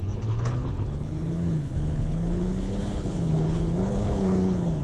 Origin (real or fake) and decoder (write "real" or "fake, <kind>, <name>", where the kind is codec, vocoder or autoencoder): fake, codec, HILCodec